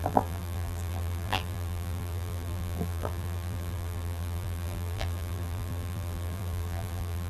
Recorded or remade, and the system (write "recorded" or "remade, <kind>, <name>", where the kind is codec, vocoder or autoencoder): remade, vocoder, BigVGAN v2